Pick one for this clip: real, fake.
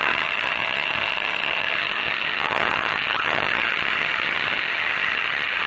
fake